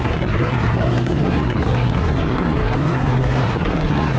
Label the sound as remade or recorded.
remade